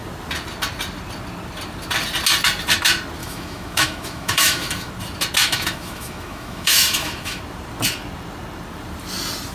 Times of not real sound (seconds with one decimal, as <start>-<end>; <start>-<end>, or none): 3.2-4.9; 5.4-7.4